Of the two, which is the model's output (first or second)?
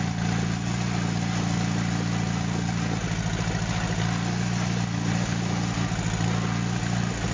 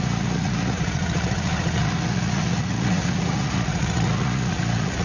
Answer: second